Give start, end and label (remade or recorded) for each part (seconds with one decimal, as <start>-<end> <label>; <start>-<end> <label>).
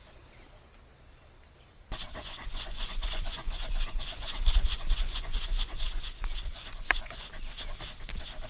0.0-2.2 recorded; 2.2-7.3 remade; 7.3-8.5 recorded